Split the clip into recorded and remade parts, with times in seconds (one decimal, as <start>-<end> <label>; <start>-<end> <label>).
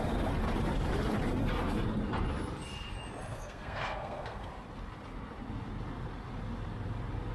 0.0-3.3 recorded; 3.3-4.5 remade; 4.5-7.3 recorded